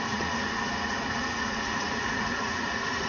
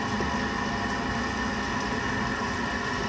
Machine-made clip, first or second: first